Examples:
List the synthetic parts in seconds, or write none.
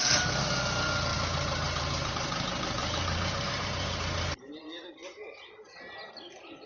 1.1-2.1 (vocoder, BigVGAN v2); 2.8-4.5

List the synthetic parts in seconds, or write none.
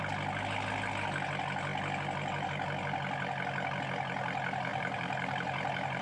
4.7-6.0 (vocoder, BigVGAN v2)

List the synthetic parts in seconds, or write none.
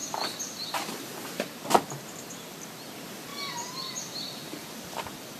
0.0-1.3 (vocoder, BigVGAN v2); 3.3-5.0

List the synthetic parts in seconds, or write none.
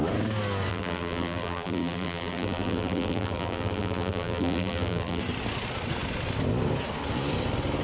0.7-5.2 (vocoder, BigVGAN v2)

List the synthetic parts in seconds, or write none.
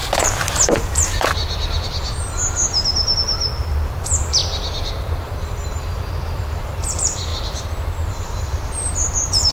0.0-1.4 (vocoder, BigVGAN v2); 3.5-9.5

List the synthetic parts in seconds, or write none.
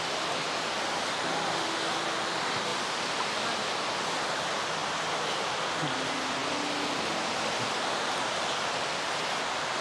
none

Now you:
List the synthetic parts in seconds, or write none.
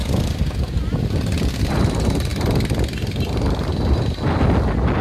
none